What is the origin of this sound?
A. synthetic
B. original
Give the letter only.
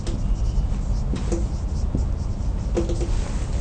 B